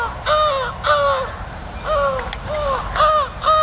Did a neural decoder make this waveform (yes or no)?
no